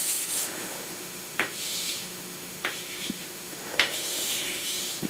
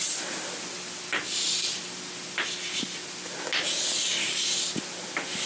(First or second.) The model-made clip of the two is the first